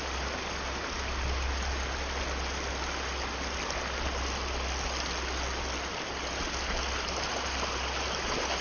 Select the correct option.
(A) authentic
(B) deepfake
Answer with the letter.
A